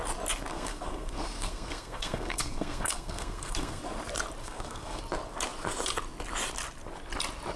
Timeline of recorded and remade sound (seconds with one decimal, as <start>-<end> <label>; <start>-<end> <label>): 0.0-0.5 recorded; 0.5-3.8 remade; 3.8-4.4 recorded; 4.4-5.0 remade; 5.0-7.6 recorded